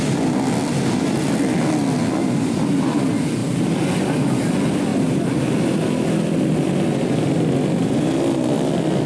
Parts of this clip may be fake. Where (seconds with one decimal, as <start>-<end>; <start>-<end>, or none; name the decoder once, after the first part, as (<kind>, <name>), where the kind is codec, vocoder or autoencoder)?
none